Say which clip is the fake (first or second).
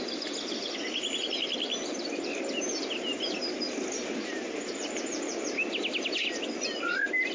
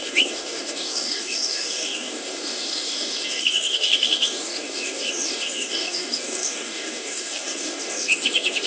second